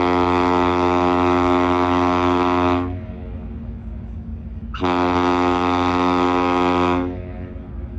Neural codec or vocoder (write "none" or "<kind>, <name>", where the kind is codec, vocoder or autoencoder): codec, DAC